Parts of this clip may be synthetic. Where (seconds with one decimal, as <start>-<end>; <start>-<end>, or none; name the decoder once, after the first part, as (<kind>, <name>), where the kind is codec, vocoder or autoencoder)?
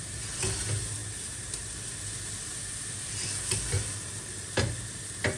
none